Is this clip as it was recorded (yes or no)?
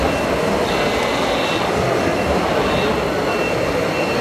yes